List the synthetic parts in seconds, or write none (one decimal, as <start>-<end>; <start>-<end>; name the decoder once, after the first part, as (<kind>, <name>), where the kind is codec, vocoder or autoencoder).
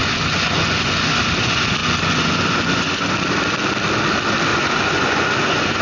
0.0-1.2 (vocoder, Vocos); 1.8-3.1; 4.5-5.8